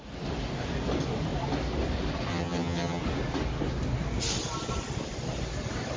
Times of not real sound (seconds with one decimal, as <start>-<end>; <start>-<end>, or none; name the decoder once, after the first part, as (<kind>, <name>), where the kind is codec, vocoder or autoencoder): 2.3-3.0 (vocoder, HiFi-GAN)